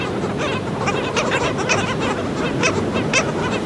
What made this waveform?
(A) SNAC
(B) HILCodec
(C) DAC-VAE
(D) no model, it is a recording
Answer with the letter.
D